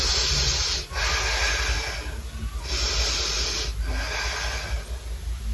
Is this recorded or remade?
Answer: recorded